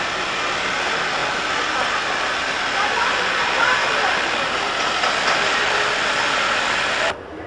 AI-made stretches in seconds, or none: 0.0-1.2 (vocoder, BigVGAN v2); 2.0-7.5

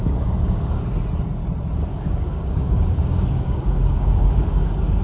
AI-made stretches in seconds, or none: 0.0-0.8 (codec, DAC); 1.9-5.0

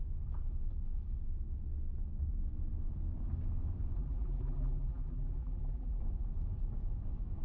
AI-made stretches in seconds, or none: 4.0-6.0 (vocoder, BigVGAN v2)